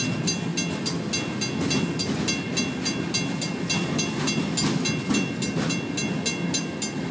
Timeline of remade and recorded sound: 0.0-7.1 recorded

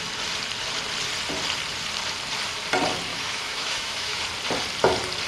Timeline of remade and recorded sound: 0.0-3.1 recorded; 3.1-4.2 remade; 4.2-5.3 recorded

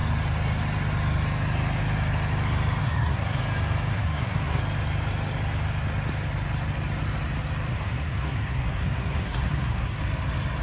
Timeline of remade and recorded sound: 0.0-2.8 recorded; 2.8-3.4 remade; 3.4-3.9 recorded; 3.9-4.6 remade; 4.6-7.7 recorded; 7.7-10.0 remade; 10.0-10.6 recorded

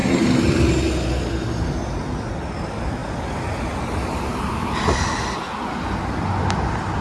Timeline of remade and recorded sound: 0.0-7.0 recorded

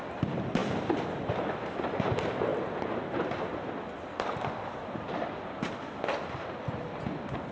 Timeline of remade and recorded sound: 0.0-0.6 recorded; 0.6-1.4 remade; 1.4-2.5 recorded; 2.5-7.0 remade; 7.0-7.5 recorded